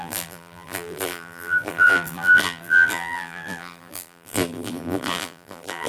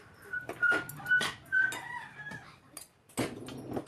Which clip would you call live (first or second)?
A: second